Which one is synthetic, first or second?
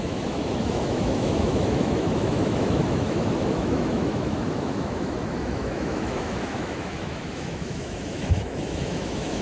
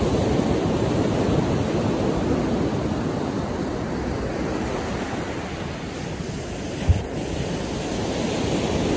first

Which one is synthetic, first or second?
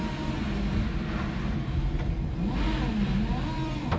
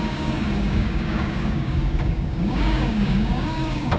second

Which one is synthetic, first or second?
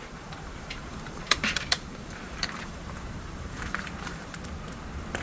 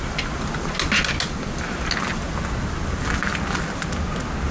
first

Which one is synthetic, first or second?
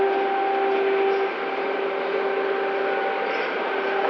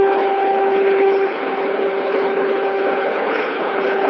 second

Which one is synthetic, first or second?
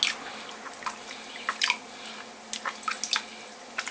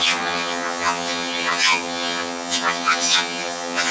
second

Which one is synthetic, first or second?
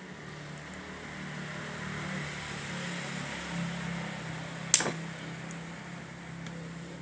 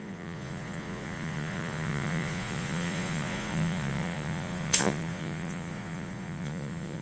second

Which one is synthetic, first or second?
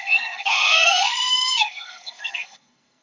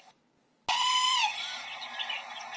first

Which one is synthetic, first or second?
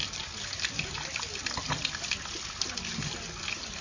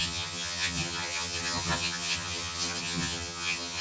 second